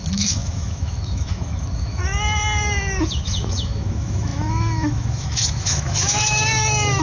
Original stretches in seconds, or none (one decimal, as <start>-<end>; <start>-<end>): 2.0-3.0